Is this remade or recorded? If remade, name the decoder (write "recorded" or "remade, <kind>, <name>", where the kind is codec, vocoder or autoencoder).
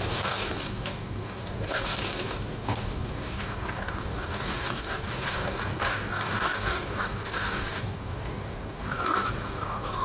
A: remade, codec, DAC